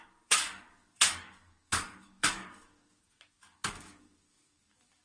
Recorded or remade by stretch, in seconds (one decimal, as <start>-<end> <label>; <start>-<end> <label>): 0.0-3.0 remade; 3.0-3.5 recorded; 3.5-5.0 remade